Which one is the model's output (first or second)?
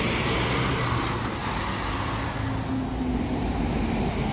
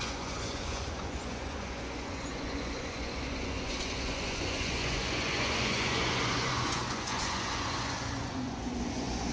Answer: second